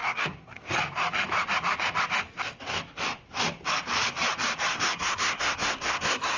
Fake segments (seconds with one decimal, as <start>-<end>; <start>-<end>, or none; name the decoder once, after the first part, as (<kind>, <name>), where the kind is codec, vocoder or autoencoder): 0.0-0.7 (codec, SNAC); 4.7-6.4